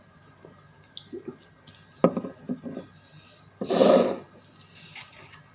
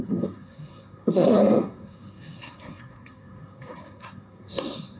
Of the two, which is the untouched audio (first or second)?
first